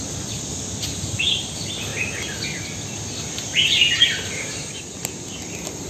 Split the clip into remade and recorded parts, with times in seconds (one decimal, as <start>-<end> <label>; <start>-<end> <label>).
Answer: 0.0-5.9 recorded